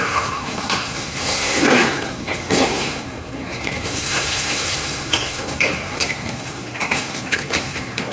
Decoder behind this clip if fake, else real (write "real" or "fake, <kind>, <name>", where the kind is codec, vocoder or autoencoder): fake, codec, SNAC